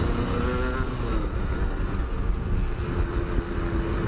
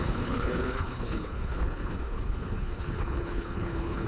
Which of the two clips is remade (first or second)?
second